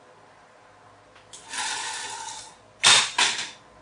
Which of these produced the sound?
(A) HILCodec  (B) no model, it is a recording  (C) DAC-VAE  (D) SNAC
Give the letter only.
B